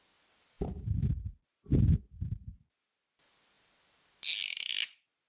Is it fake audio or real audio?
real